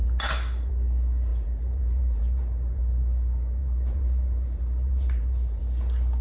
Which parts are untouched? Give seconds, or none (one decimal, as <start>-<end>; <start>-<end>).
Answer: 0.0-1.3; 2.8-3.6; 5.6-6.2